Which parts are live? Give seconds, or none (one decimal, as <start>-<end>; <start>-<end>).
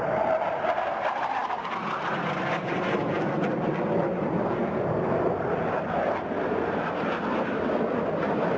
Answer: 0.0-8.6